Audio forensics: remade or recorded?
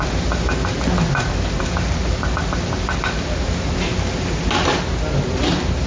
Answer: recorded